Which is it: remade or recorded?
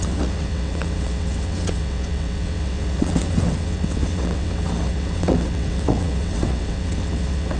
remade